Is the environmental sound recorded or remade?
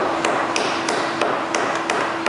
recorded